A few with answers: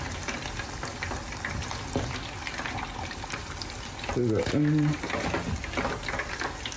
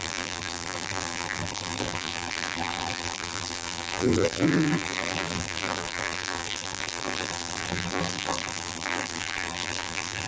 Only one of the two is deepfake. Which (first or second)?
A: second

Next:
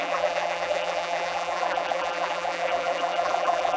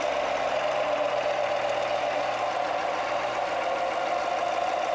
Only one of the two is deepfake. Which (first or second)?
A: first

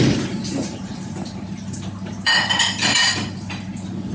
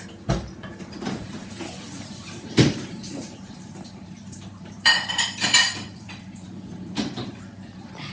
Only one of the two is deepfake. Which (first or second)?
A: second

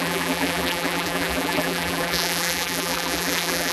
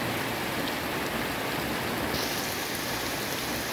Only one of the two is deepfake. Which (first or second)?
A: first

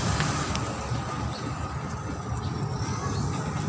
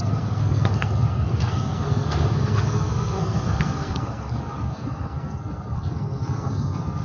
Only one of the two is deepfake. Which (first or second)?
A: second